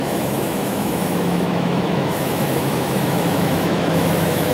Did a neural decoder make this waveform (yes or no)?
yes